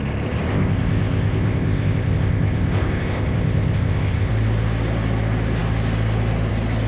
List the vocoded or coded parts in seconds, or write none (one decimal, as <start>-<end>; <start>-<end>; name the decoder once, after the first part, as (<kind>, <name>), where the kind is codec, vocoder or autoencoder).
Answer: 0.5-4.3 (codec, ZipCodec)